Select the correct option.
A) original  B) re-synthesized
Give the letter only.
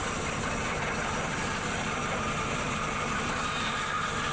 A